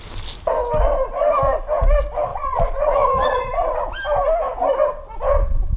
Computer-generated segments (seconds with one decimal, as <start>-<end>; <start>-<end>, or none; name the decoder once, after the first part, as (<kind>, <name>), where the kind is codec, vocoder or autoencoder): 2.3-3.8 (vocoder, Vocos)